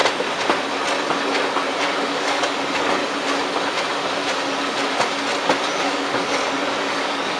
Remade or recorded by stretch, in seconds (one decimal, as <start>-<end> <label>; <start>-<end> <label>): 0.0-2.0 recorded; 2.0-3.0 remade; 3.0-5.8 recorded; 5.8-7.4 remade